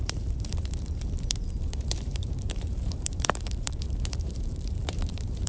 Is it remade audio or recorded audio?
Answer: remade